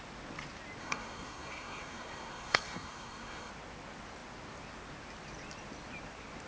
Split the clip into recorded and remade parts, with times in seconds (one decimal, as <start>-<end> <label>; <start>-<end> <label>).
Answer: 0.0-0.8 recorded; 0.8-3.5 remade; 3.5-6.5 recorded